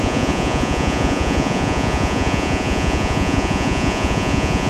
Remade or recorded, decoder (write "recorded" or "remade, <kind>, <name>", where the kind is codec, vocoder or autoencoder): remade, vocoder, Vocos